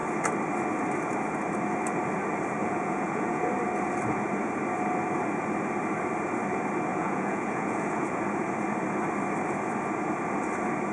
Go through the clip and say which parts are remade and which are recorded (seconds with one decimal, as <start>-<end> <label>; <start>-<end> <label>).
0.0-2.6 recorded; 2.6-3.4 remade; 3.4-6.9 recorded; 6.9-8.2 remade; 8.2-10.9 recorded